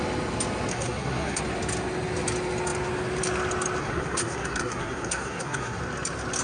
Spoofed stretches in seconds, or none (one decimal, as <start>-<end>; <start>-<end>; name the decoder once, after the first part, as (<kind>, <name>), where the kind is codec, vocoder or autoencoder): 0.7-1.4 (codec, SNAC); 3.8-5.8